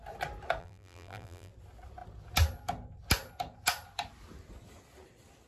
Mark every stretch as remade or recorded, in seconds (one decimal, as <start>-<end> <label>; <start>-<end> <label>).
0.0-0.6 recorded; 0.6-1.5 remade; 1.5-5.5 recorded